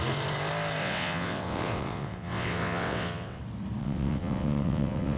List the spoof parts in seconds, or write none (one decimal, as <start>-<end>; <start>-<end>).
0.8-3.4; 3.8-5.2